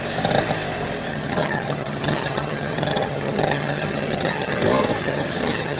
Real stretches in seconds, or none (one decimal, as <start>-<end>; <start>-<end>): 0.0-1.1; 4.6-5.0